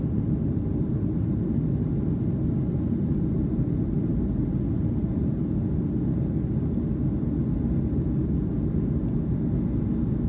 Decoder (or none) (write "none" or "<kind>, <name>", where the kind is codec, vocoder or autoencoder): none